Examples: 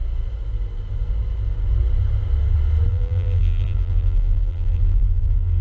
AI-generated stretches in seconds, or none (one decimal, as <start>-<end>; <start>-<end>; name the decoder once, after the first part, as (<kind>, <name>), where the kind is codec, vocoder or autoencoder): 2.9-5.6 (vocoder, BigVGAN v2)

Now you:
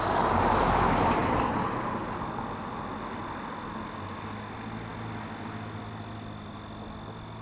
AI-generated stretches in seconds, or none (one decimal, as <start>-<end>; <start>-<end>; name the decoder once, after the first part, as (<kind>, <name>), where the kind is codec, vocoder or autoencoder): none

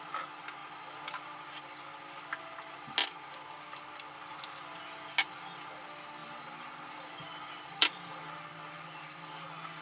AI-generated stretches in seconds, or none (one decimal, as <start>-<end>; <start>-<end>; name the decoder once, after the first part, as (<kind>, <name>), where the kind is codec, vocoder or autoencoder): 0.6-2.4 (vocoder, BigVGAN v2); 3.0-4.3; 6.2-8.3